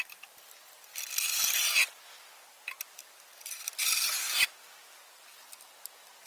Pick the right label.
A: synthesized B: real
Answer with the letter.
B